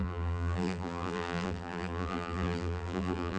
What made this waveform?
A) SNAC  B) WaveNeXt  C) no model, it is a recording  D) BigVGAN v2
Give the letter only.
D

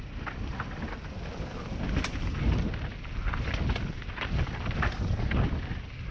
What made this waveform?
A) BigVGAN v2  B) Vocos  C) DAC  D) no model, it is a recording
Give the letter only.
D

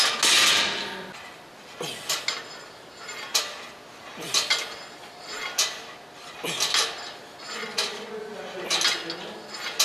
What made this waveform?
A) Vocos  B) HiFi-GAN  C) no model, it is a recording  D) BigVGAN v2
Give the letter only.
C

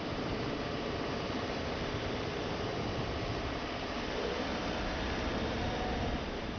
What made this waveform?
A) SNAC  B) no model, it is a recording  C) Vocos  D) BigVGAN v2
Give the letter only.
D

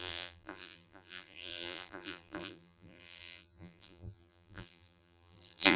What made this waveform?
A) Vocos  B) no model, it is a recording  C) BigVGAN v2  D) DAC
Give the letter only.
C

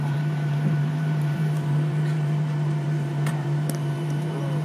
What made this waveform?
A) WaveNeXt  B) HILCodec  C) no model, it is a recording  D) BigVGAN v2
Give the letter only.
D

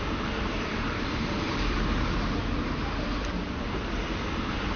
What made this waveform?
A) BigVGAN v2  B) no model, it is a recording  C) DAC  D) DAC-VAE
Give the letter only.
A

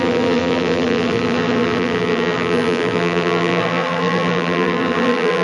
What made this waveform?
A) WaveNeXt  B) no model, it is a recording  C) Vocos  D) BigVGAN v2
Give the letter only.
D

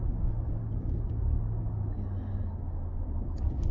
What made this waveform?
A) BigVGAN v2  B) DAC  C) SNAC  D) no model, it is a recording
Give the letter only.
D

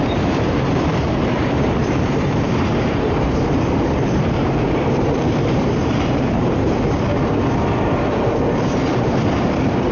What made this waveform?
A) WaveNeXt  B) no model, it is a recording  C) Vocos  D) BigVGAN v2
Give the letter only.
D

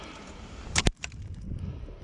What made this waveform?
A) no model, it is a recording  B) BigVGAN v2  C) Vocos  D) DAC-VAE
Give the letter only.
B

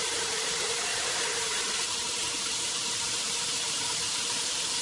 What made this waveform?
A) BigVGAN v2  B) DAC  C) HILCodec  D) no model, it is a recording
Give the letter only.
A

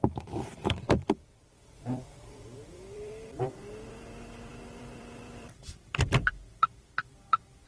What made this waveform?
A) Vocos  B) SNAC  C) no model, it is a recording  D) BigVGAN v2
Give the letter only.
D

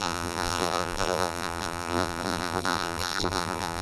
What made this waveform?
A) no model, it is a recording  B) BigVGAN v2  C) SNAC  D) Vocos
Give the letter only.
B